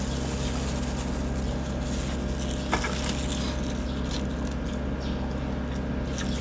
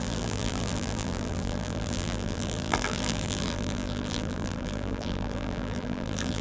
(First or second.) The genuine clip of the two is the first